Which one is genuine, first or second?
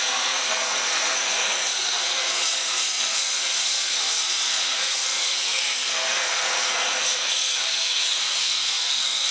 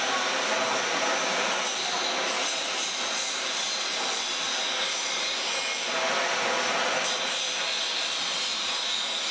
second